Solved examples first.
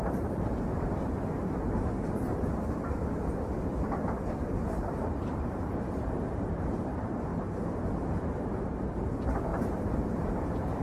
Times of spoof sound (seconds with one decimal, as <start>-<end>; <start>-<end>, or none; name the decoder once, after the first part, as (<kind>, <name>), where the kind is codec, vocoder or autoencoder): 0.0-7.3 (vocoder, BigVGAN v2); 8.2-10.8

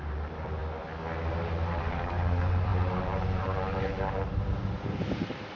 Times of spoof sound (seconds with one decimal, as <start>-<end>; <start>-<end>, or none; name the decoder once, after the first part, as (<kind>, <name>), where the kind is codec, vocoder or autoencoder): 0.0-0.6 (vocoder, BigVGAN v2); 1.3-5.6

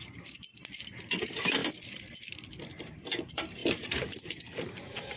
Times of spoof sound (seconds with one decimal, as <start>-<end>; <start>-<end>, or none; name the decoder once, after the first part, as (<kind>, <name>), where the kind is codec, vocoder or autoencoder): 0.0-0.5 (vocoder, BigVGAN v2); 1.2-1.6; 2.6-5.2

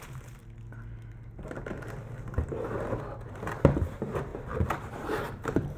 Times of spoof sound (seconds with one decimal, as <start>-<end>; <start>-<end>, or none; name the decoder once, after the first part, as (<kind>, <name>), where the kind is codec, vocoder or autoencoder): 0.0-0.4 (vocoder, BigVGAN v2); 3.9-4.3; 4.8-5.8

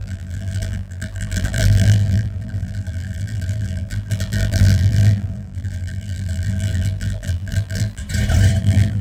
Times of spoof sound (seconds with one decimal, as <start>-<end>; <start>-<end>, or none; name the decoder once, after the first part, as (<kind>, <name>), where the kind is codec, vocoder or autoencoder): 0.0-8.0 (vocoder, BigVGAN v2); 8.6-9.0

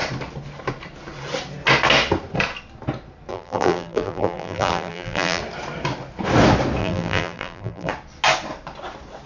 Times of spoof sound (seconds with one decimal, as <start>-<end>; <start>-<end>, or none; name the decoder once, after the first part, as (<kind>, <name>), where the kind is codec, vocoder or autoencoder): 3.3-5.4 (vocoder, BigVGAN v2); 6.8-7.9

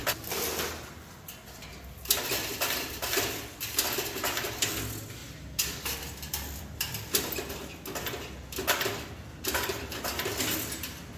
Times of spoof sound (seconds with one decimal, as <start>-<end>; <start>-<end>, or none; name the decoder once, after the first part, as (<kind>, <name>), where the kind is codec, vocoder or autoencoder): 5.2-7.5 (vocoder, BigVGAN v2); 9.3-10.4

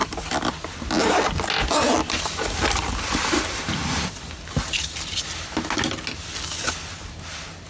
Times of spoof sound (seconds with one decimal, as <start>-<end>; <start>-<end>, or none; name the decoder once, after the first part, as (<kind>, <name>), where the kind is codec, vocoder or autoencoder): none